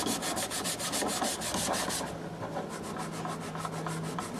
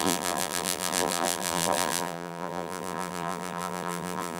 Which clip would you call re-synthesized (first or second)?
second